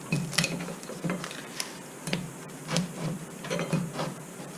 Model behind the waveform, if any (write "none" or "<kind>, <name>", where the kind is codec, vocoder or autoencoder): vocoder, BigVGAN v2